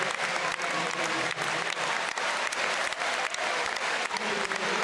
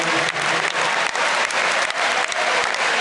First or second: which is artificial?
first